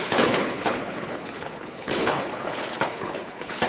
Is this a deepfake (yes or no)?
yes